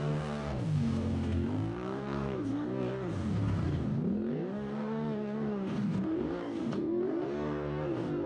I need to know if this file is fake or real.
fake